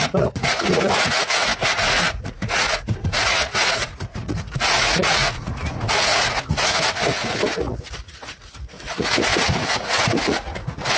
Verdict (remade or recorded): remade